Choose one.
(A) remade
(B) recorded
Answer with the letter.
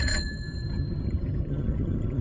A